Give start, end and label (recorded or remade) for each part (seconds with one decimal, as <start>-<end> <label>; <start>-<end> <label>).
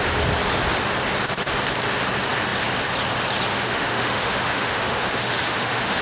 0.0-3.5 recorded; 3.5-6.0 remade